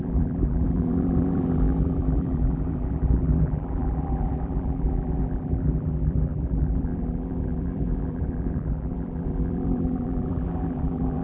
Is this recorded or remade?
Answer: remade